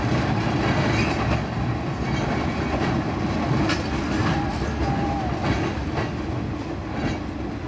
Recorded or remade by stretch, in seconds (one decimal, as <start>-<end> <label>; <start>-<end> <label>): 0.0-7.7 recorded